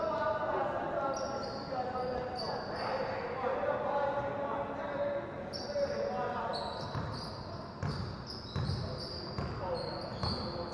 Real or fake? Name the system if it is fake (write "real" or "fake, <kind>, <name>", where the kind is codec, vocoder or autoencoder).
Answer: real